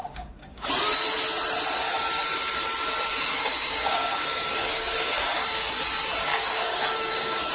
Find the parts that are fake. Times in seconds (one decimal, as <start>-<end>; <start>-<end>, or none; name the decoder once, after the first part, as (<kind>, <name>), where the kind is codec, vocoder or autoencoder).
0.0-0.7 (codec, DAC); 3.1-5.7; 6.3-7.5